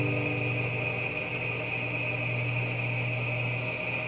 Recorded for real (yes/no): yes